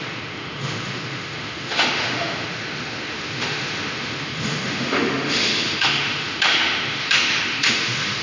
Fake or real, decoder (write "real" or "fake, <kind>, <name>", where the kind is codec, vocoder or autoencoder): fake, autoencoder, DAC-VAE